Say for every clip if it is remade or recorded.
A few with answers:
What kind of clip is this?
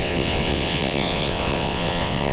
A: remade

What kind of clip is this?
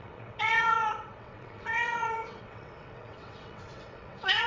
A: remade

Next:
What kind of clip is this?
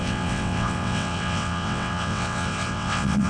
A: remade